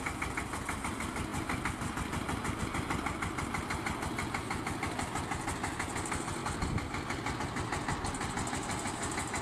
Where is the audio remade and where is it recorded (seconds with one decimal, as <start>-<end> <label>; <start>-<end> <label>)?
0.0-9.4 recorded